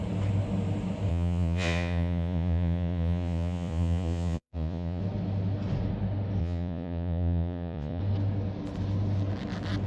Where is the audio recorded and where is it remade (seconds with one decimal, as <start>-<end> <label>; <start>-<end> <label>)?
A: 0.0-1.1 recorded; 1.1-5.0 remade; 5.0-6.4 recorded; 6.4-8.0 remade; 8.0-9.9 recorded